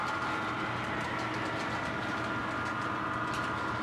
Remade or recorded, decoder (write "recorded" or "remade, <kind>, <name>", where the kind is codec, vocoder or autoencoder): recorded